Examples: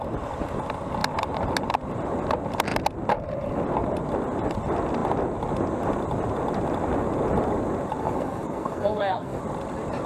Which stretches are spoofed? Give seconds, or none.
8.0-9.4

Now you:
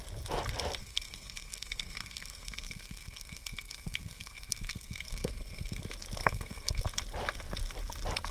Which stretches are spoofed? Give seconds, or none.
0.8-5.8; 6.2-6.8

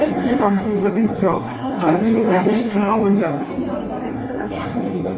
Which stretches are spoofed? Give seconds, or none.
0.0-3.5; 4.1-5.2